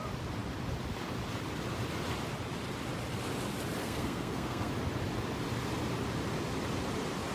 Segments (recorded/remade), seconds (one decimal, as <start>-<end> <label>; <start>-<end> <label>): 0.0-3.8 recorded; 3.8-4.7 remade; 4.7-7.3 recorded